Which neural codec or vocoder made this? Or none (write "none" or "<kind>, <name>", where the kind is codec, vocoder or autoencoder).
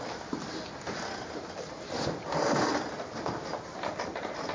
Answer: none